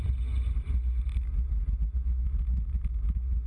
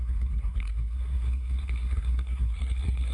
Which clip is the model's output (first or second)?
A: second